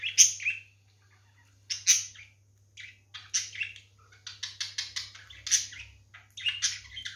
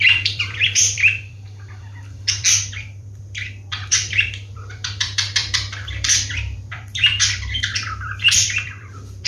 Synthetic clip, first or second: second